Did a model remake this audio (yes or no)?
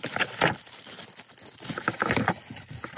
no